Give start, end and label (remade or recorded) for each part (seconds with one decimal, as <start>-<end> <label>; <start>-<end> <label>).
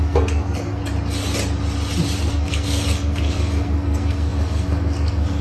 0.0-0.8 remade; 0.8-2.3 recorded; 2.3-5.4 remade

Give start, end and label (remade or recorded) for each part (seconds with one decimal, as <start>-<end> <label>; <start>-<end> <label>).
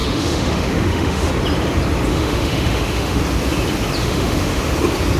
0.0-1.3 remade; 1.3-2.1 recorded; 2.1-3.2 remade; 3.2-4.0 recorded; 4.0-4.6 remade; 4.6-5.2 recorded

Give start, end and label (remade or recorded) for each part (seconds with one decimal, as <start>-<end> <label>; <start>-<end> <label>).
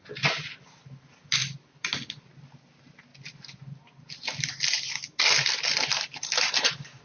0.0-7.0 recorded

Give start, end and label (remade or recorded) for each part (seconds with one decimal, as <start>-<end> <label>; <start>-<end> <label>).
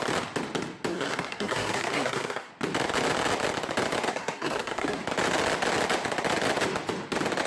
0.0-0.9 recorded; 0.9-2.5 remade; 2.5-4.1 recorded; 4.1-5.0 remade; 5.0-7.5 recorded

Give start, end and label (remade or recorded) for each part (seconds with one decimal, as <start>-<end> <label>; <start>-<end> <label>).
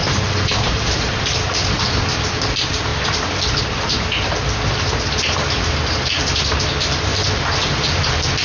0.0-1.2 remade; 1.2-8.4 recorded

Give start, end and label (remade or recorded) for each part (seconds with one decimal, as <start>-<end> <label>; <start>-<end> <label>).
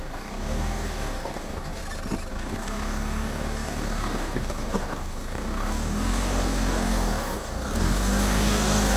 0.0-1.8 remade; 1.8-2.3 recorded; 2.3-9.0 remade